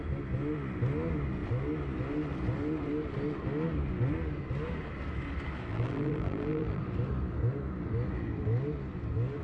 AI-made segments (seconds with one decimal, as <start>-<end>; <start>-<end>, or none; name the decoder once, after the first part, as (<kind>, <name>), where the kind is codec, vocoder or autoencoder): 5.7-6.8 (vocoder, BigVGAN v2)